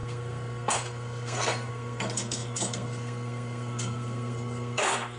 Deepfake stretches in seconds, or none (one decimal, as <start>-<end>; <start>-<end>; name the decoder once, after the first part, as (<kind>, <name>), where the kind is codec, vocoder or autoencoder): 0.0-5.2 (codec, SNAC)